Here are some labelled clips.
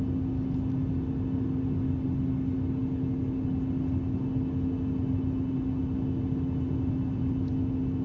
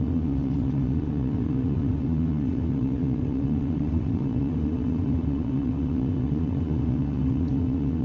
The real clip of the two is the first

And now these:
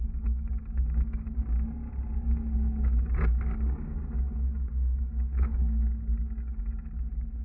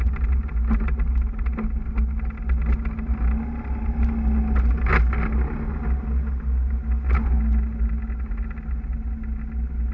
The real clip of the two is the second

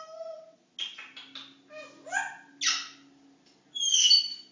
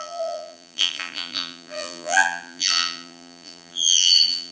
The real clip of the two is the first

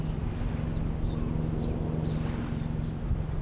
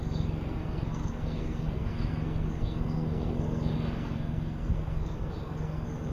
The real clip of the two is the first